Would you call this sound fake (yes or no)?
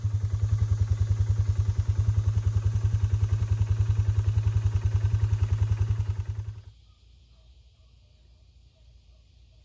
no